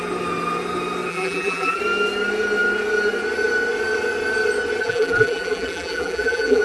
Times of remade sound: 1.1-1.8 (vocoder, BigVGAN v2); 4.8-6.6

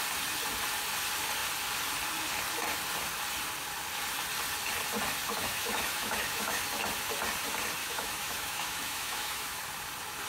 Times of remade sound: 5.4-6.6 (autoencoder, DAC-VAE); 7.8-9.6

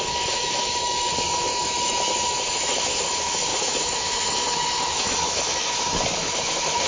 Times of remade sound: 0.0-6.9 (autoencoder, DAC-VAE)

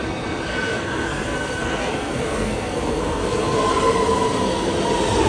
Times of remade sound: 0.5-3.7 (codec, SNAC)

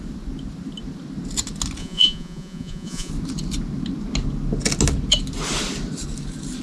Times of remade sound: 1.8-3.1 (vocoder, Vocos)

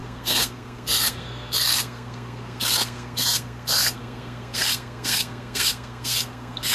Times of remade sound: 0.0-6.7 (codec, SNAC)

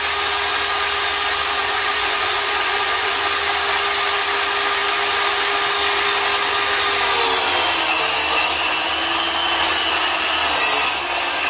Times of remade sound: 1.6-3.1 (vocoder, Vocos)